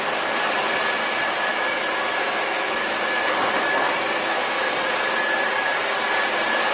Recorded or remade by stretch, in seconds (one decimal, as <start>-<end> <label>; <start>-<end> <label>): 0.0-1.5 recorded; 1.5-3.5 remade; 3.5-6.7 recorded